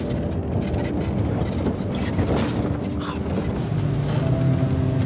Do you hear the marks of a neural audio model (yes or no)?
no